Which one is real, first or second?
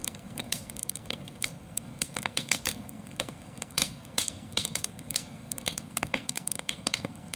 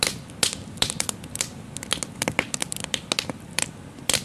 second